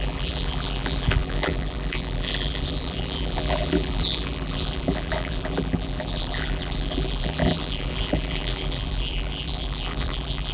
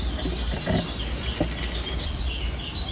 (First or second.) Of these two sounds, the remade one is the first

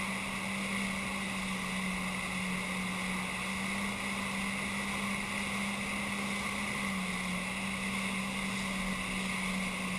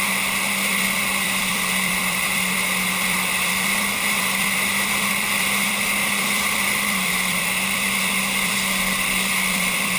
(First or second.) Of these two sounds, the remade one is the second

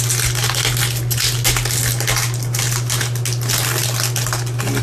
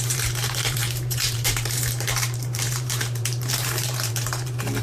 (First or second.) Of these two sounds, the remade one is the second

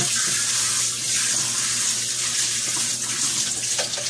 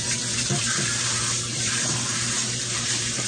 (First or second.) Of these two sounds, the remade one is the second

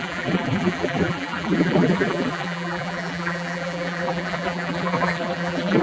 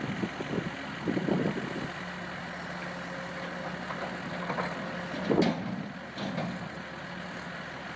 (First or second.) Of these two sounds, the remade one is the first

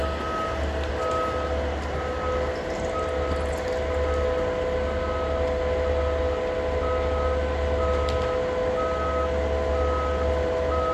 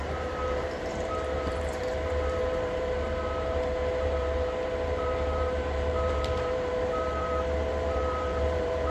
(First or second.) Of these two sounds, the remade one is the second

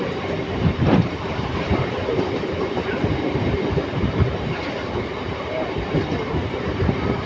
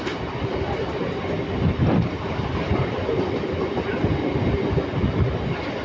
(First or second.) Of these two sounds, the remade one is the first